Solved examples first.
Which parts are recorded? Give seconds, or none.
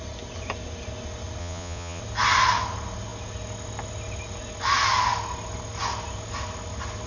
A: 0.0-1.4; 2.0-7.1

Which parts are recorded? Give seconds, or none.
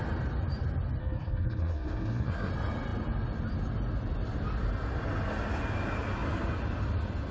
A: 0.0-1.0; 2.5-7.3